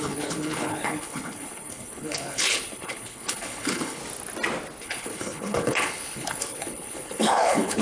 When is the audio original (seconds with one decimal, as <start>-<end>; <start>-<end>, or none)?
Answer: 4.0-4.8